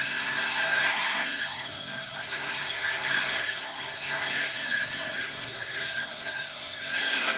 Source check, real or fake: fake